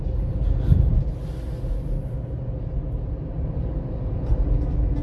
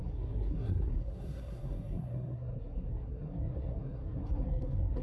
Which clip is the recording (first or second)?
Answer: first